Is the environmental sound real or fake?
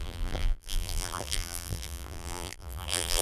fake